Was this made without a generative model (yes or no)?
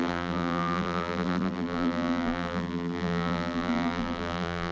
no